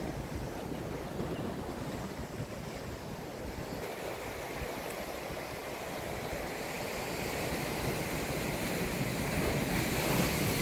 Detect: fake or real real